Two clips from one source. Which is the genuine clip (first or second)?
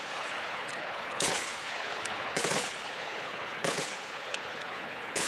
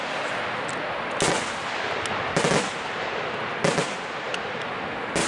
second